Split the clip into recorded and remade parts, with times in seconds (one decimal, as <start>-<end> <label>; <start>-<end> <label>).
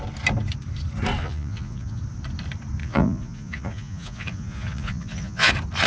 0.0-1.2 recorded; 1.2-2.0 remade; 2.0-2.8 recorded; 2.8-5.5 remade; 5.5-5.9 recorded